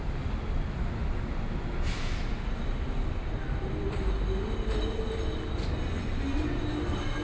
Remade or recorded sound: recorded